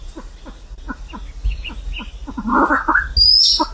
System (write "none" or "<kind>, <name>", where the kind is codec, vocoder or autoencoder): none